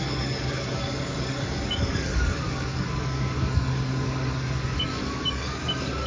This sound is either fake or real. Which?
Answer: fake